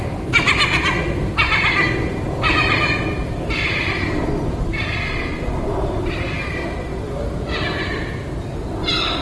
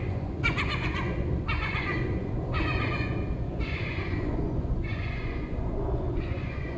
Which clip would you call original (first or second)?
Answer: first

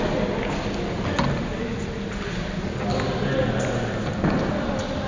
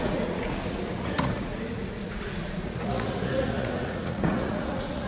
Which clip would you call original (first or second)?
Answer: first